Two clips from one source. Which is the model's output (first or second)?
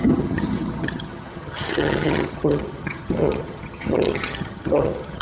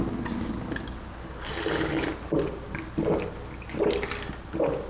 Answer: first